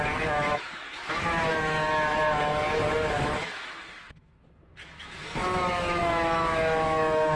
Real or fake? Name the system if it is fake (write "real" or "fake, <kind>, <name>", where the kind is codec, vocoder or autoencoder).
fake, autoencoder, DAC-VAE